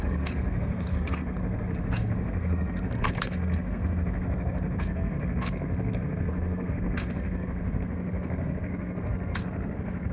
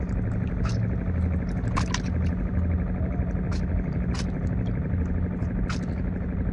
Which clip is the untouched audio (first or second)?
second